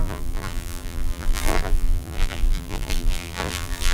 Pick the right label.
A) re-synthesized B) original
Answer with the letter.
A